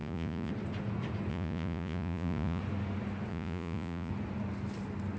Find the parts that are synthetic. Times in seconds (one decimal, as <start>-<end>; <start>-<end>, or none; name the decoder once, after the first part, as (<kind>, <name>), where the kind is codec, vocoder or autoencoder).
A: 0.0-0.5 (vocoder, Vocos); 1.3-2.6; 3.3-4.1